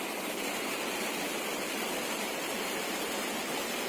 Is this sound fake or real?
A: real